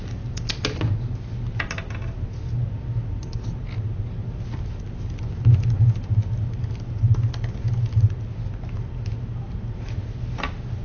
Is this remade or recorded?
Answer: recorded